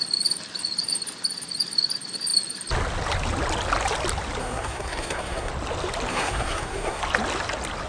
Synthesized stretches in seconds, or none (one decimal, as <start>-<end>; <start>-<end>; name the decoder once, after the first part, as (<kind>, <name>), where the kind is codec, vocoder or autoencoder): 4.4-5.5 (codec, SNAC); 6.1-7.0